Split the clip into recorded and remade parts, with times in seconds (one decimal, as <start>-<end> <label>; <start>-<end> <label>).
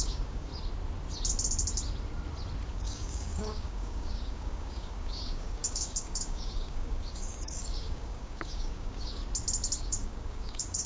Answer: 0.0-0.5 remade; 0.5-2.7 recorded; 2.7-9.2 remade; 9.2-9.8 recorded; 9.8-10.9 remade